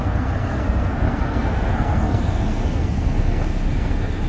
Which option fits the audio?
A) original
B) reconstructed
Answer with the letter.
B